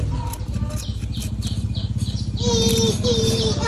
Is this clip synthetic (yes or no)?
no